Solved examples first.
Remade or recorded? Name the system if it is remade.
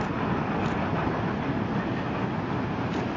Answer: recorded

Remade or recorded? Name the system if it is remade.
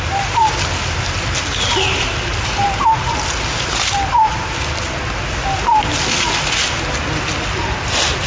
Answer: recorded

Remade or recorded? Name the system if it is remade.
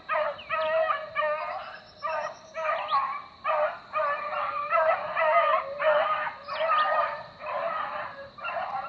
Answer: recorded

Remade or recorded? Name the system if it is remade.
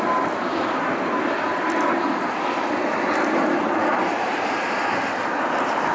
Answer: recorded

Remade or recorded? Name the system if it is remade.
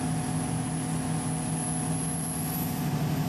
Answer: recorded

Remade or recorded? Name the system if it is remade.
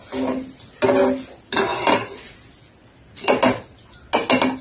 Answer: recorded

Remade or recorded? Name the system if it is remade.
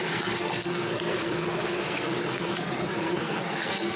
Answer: remade, codec, SNAC